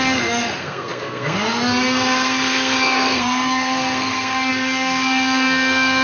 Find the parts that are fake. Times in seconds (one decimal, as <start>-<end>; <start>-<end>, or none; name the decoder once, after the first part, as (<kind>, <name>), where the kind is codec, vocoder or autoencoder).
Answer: 0.0-6.0 (codec, SNAC)